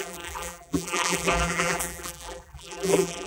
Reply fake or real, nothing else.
fake